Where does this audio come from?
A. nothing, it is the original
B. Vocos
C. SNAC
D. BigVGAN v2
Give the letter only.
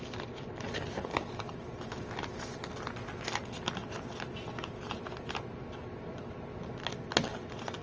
A